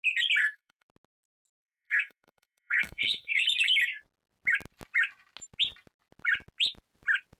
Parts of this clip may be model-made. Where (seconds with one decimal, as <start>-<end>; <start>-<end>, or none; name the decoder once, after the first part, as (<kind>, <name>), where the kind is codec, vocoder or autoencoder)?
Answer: 0.4-0.9 (codec, SNAC); 1.6-3.4